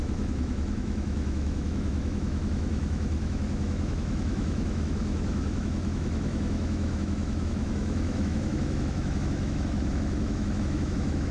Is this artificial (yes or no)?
yes